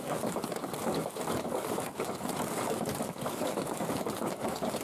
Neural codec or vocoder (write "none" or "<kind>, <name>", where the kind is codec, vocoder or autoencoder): codec, DAC